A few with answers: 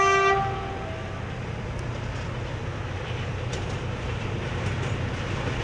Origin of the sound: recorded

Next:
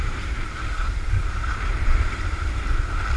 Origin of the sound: remade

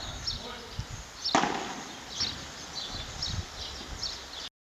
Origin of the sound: recorded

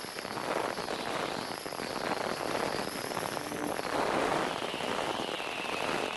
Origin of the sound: recorded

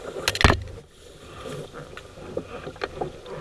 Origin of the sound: recorded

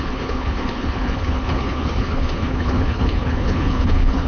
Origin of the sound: remade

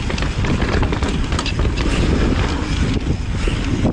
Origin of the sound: recorded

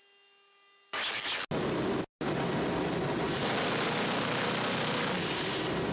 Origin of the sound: recorded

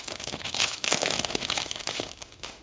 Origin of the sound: remade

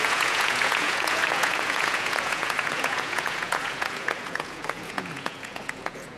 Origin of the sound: remade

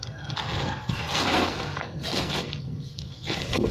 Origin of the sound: remade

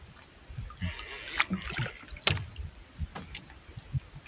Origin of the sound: recorded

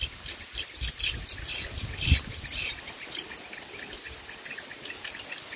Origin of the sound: recorded